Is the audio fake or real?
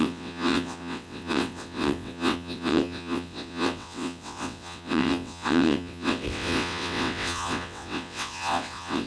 fake